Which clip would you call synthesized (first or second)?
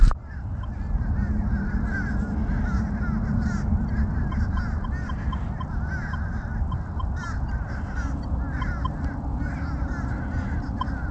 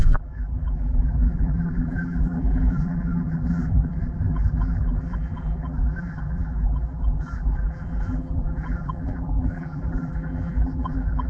second